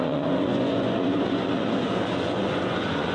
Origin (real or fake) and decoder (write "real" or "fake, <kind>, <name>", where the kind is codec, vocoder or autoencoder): fake, vocoder, Vocos